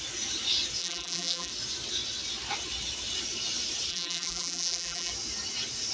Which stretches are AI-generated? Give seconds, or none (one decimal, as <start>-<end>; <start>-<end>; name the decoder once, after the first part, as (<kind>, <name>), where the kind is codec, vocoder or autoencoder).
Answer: 0.8-1.5 (vocoder, BigVGAN v2); 3.9-5.1